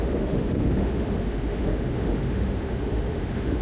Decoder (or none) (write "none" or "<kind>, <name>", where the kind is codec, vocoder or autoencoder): autoencoder, DAC-VAE